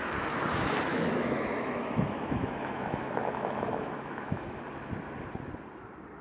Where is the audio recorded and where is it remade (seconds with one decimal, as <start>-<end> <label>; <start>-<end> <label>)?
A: 0.0-0.9 recorded; 0.9-4.6 remade; 4.6-6.2 recorded